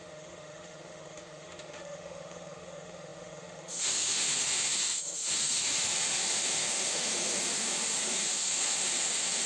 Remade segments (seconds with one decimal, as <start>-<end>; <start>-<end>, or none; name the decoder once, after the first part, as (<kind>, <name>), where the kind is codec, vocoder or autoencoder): 0.0-9.5 (autoencoder, DAC-VAE)